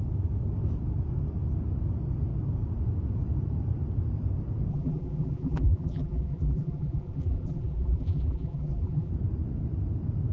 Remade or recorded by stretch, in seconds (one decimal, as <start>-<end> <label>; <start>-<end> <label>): 0.0-4.7 recorded; 4.7-9.1 remade; 9.1-10.3 recorded